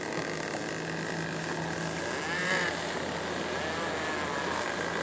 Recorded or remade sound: recorded